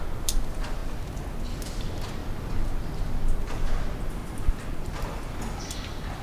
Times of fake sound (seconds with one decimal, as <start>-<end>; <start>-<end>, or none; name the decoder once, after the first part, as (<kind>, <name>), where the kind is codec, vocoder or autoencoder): 4.2-5.4 (vocoder, BigVGAN v2)